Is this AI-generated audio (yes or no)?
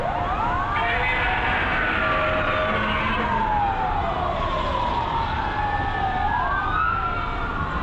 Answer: no